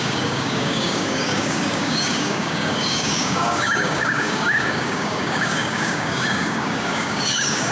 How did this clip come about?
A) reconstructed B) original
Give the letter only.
A